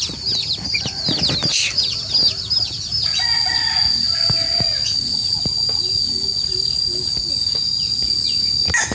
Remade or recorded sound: recorded